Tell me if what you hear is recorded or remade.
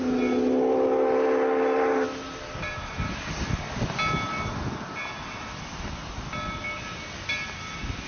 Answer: recorded